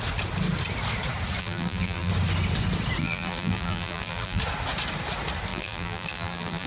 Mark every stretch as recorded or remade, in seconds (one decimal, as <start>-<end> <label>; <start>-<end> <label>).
0.0-1.4 recorded; 1.4-2.1 remade; 2.1-3.0 recorded; 3.0-4.4 remade; 4.4-5.5 recorded; 5.5-6.7 remade